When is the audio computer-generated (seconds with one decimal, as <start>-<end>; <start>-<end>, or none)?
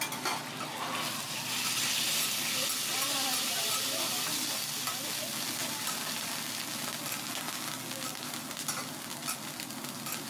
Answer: none